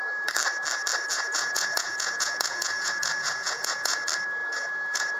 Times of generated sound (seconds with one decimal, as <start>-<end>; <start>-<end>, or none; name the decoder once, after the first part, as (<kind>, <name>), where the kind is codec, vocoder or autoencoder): 1.1-4.0 (vocoder, Vocos); 4.4-5.2